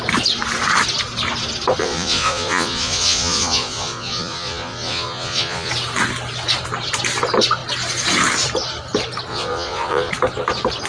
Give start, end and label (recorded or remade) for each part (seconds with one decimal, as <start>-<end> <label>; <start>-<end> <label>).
0.0-1.8 recorded; 1.8-5.7 remade; 5.7-9.3 recorded; 9.3-10.1 remade; 10.1-10.9 recorded